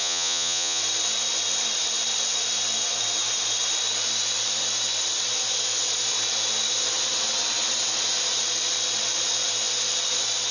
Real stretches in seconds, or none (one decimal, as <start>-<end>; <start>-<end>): 0.8-10.5